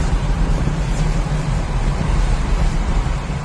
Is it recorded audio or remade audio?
remade